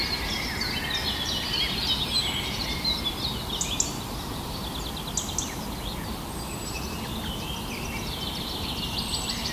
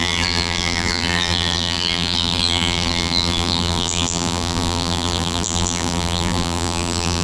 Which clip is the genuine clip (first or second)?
first